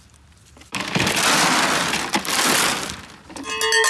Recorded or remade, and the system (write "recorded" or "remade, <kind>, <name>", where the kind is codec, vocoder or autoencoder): recorded